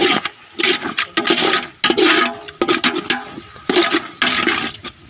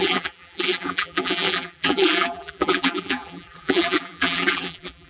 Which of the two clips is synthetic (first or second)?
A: second